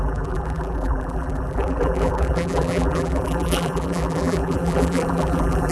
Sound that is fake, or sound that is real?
fake